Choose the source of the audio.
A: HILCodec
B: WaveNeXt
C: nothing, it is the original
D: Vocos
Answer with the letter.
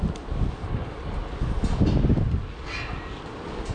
C